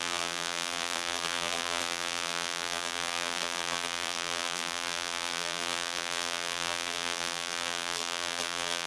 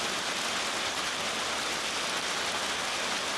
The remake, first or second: first